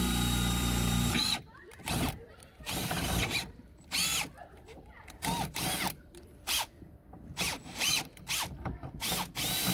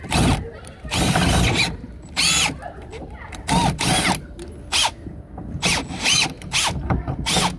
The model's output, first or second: first